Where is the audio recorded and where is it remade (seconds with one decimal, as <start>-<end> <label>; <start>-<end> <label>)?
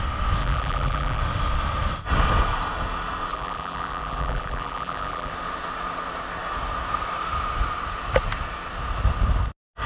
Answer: 0.0-0.4 recorded; 0.4-1.2 remade; 1.2-3.3 recorded; 3.3-5.3 remade; 5.3-9.9 recorded